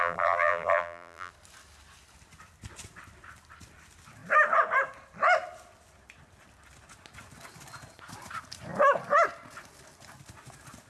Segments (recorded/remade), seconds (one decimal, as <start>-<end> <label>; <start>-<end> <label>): 0.0-1.3 remade; 1.3-10.9 recorded